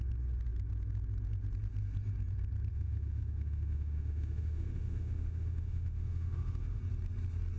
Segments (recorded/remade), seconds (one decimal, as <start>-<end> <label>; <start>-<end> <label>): 0.0-2.7 recorded; 2.7-6.8 remade; 6.8-7.6 recorded